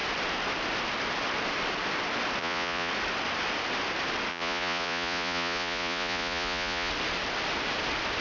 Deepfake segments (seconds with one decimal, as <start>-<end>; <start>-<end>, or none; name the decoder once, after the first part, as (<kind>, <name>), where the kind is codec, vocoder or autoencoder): 2.4-2.9 (vocoder, Vocos); 4.3-6.9